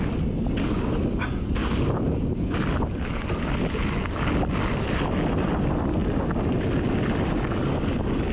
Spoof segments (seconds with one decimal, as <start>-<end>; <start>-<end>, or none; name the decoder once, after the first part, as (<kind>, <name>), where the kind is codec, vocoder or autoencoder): none